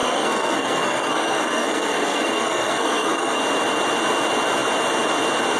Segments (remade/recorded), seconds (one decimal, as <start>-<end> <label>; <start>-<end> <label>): 0.0-3.4 remade; 3.4-5.6 recorded